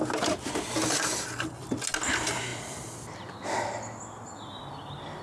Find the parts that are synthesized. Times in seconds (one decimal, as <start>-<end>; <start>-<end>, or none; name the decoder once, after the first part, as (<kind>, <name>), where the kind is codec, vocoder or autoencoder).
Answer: none